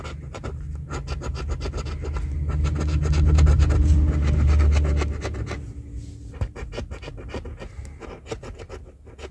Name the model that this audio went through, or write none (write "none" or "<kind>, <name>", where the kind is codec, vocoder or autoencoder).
none